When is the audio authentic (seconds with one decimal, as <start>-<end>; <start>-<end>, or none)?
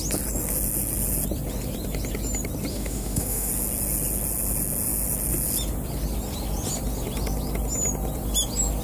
0.0-2.7; 3.5-8.8